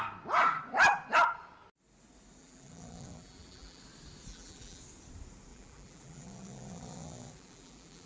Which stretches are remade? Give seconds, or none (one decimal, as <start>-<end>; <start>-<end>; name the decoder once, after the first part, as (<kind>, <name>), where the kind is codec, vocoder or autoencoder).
2.4-3.8 (vocoder, BigVGAN v2); 4.3-4.8; 5.5-8.1